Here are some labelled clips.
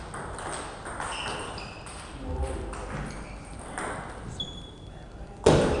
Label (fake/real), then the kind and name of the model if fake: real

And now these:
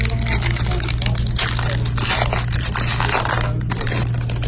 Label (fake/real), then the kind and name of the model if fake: real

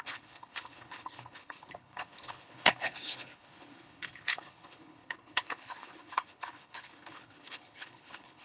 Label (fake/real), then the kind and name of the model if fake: fake, codec, HILCodec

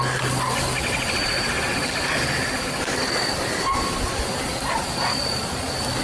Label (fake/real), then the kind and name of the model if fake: real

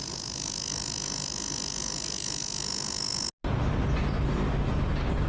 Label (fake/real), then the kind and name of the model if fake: real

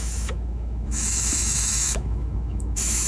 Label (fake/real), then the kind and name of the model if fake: fake, autoencoder, DAC-VAE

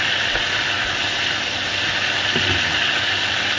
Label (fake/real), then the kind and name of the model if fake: real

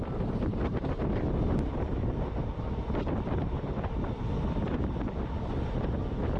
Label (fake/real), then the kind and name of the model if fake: real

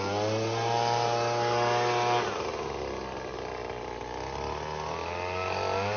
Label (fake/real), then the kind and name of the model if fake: real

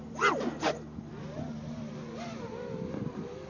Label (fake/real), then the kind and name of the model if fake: real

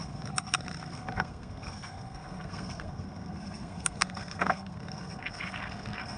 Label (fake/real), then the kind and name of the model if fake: fake, codec, SNAC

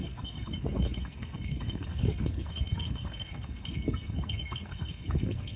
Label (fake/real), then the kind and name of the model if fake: fake, codec, SNAC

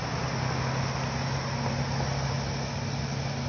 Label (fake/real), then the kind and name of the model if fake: real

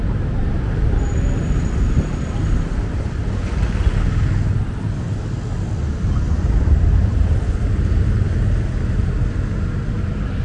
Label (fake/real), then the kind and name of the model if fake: real